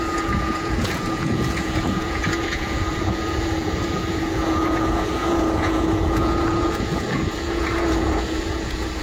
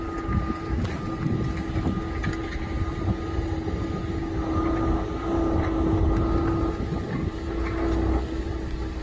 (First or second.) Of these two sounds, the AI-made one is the first